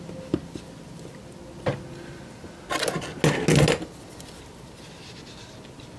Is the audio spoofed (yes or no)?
no